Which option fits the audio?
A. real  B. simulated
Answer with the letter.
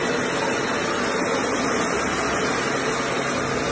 A